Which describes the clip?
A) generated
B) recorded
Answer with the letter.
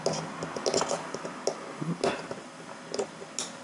B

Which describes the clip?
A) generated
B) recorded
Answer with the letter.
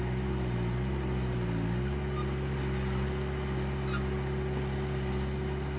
B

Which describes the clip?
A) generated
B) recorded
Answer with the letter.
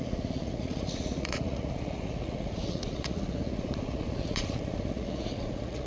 A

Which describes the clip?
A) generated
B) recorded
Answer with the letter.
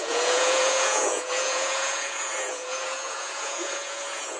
A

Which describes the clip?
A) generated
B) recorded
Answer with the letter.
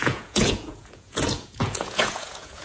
A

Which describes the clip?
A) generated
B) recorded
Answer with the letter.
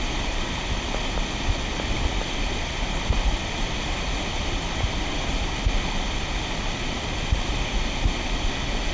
B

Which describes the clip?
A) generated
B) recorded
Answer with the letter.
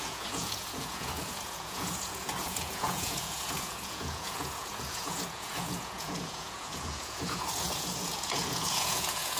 A